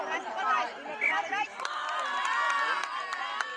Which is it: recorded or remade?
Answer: recorded